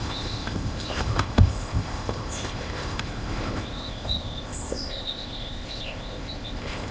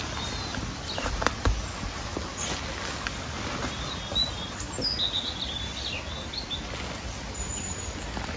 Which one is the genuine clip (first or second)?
second